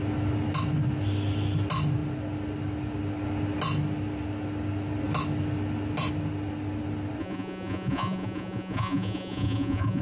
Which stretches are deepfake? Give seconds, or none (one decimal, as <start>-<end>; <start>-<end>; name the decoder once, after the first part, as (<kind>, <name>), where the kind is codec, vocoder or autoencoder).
7.2-10.0 (vocoder, Vocos)